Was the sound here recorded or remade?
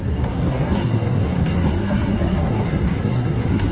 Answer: remade